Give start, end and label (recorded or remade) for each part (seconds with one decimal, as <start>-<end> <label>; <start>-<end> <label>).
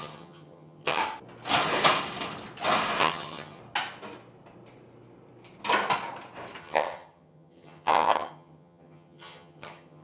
0.0-1.0 remade; 1.0-3.0 recorded; 3.0-3.6 remade; 3.6-6.6 recorded; 6.6-10.0 remade